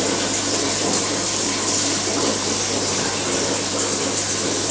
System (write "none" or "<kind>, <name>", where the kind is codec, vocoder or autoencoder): none